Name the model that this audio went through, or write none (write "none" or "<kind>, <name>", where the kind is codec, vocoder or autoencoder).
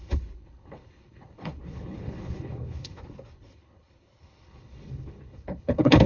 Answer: codec, HILCodec